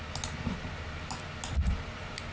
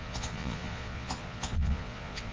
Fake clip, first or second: second